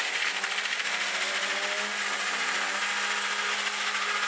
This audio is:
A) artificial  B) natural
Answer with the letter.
B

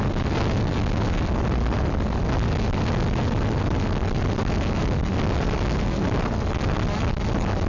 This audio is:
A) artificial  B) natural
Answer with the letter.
B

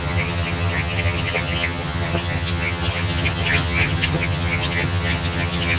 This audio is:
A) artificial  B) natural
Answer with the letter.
A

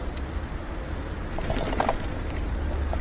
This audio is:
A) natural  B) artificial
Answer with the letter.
A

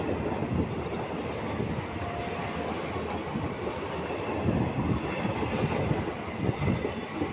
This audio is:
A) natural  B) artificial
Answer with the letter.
A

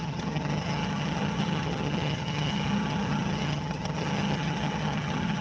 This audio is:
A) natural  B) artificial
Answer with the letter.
B